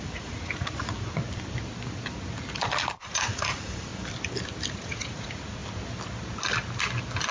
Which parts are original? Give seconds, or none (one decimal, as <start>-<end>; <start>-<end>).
1.2-3.0; 3.9-4.7; 5.6-7.3

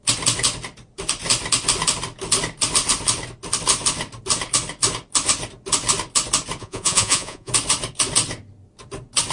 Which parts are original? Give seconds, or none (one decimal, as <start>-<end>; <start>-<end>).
0.0-6.6; 7.5-9.3

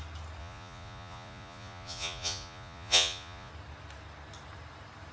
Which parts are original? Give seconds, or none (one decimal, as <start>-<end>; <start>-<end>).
0.0-0.4; 3.5-5.1